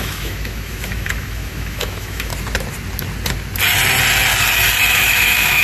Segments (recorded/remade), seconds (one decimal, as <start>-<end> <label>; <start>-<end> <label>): 0.0-2.3 remade; 2.3-4.9 recorded; 4.9-5.6 remade